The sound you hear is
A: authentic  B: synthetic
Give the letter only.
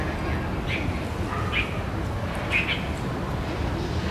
A